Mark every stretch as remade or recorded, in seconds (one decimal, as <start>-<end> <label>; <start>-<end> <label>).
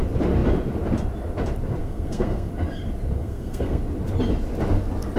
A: 0.0-1.8 recorded; 1.8-2.5 remade; 2.5-3.2 recorded; 3.2-3.8 remade; 3.8-5.2 recorded